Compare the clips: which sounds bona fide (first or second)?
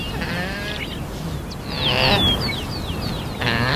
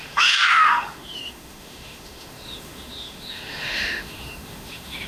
first